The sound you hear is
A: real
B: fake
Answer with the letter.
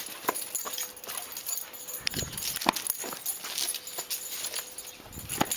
A